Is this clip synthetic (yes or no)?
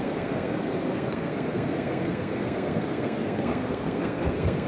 yes